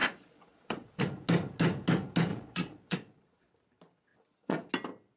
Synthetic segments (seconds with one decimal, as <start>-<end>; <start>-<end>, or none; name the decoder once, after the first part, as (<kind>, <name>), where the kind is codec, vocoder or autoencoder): 0.0-1.0 (vocoder, Vocos); 2.3-3.5; 4.1-4.7